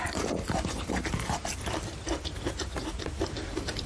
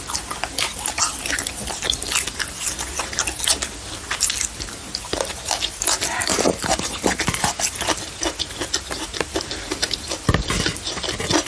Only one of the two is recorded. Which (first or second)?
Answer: second